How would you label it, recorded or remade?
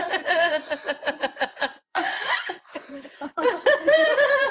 remade